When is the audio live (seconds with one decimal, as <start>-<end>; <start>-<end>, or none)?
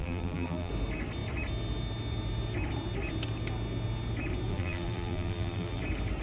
0.7-4.5; 5.8-6.2